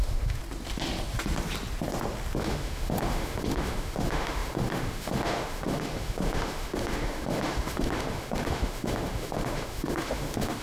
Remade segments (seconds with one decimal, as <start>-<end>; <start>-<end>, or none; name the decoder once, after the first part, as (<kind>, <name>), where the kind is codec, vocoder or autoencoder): 0.0-0.4 (autoencoder, DAC-VAE); 2.4-10.6